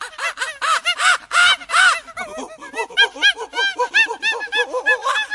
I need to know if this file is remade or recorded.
recorded